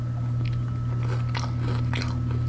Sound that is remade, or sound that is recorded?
recorded